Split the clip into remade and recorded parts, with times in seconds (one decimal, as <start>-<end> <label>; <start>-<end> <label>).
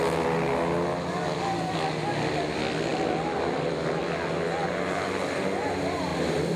0.0-6.6 recorded